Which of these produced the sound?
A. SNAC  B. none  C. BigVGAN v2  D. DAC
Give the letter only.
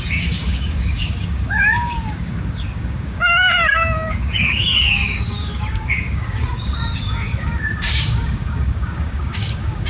D